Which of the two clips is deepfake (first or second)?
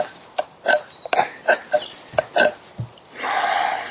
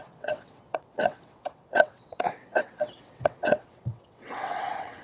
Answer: second